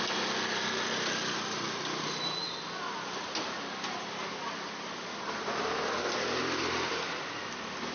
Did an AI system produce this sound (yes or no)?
no